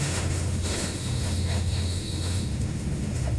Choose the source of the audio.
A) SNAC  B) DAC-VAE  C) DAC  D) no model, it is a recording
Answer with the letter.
B